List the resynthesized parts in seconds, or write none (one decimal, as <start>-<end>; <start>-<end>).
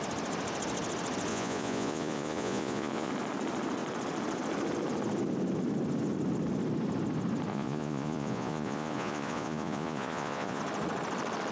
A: 1.3-3.1; 7.5-10.6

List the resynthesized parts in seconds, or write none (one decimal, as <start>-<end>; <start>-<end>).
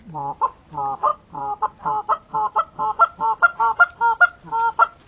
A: 1.1-4.2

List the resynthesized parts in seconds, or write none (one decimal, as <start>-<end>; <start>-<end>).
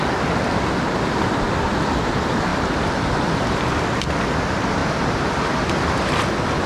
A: none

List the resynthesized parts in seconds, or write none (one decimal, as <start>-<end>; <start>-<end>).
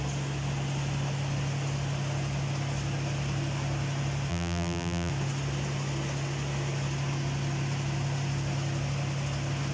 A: 4.3-5.1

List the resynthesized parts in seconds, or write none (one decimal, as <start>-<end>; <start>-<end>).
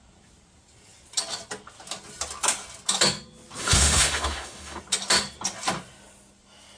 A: 3.6-4.8